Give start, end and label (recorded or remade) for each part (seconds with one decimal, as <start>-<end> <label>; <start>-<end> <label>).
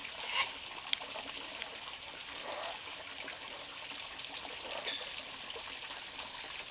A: 0.0-6.7 recorded